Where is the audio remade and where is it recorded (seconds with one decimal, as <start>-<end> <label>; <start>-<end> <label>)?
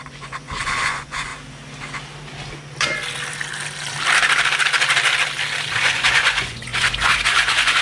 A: 0.0-1.3 remade; 1.3-5.7 recorded; 5.7-7.8 remade